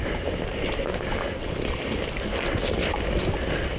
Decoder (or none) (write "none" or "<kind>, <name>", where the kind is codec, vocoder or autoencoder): none